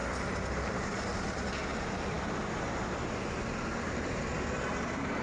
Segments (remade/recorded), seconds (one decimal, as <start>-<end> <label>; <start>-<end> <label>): 0.0-5.2 recorded